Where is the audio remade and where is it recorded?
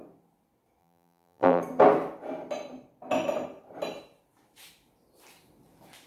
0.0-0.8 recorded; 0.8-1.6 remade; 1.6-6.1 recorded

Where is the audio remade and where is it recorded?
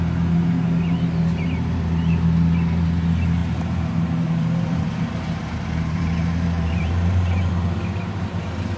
0.0-3.4 recorded; 3.4-7.4 remade; 7.4-8.8 recorded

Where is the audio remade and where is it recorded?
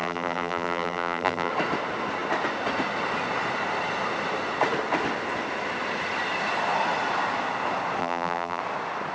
0.0-1.5 remade; 1.5-8.0 recorded; 8.0-8.6 remade; 8.6-9.1 recorded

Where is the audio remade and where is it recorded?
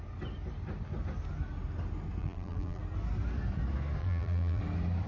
0.0-2.2 recorded; 2.2-2.8 remade; 2.8-4.0 recorded; 4.0-4.6 remade; 4.6-5.1 recorded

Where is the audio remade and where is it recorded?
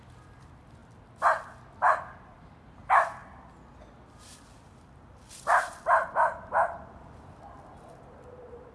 0.0-0.8 remade; 0.8-2.3 recorded; 2.3-3.2 remade; 3.2-7.0 recorded; 7.0-8.7 remade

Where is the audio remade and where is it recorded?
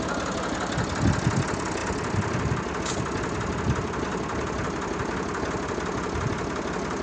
0.0-7.0 recorded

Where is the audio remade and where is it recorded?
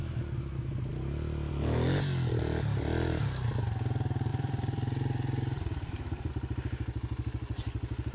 0.0-4.3 recorded; 4.3-6.3 remade; 6.3-8.1 recorded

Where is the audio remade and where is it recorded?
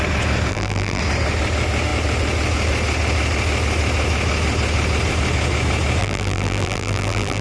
0.0-0.5 recorded; 0.5-1.0 remade; 1.0-6.0 recorded; 6.0-7.4 remade